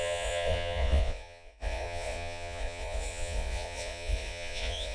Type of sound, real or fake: fake